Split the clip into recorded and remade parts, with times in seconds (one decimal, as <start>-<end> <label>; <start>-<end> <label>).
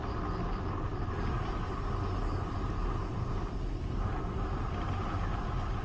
0.0-5.8 recorded